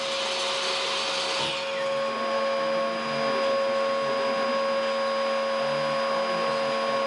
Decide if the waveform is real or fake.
real